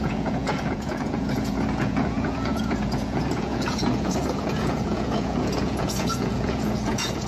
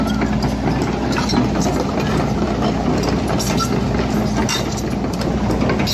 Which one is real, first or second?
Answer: second